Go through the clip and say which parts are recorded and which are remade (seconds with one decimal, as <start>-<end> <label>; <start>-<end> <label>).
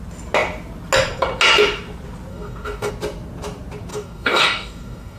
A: 0.0-2.3 recorded; 2.3-2.9 remade; 2.9-3.9 recorded; 3.9-5.2 remade